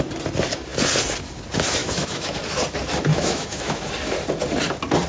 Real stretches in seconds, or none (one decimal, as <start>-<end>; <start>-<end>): 0.0-1.8; 2.4-3.1; 3.9-5.1